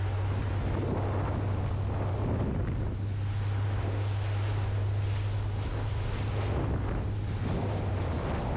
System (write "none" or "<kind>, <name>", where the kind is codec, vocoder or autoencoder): none